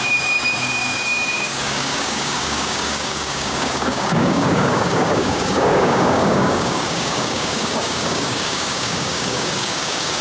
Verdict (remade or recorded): remade